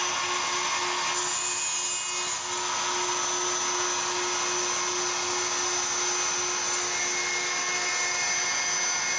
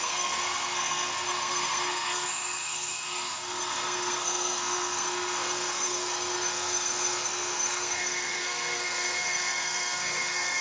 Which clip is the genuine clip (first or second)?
first